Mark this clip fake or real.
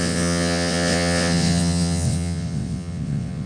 fake